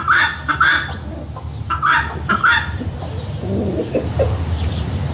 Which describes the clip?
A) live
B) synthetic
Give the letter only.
A